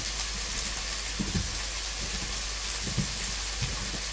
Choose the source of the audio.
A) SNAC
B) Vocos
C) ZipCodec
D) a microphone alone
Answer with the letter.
D